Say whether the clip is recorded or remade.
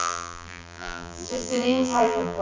remade